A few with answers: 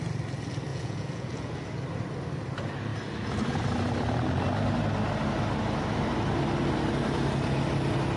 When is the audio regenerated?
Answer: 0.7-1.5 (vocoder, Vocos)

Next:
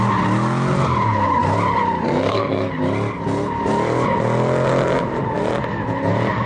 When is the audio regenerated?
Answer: 2.1-2.7 (codec, SNAC)

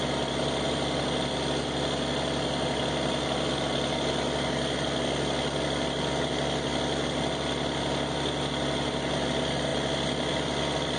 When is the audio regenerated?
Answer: none

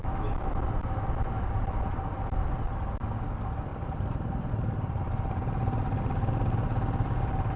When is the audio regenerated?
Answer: 0.0-0.5 (autoencoder, DAC-VAE)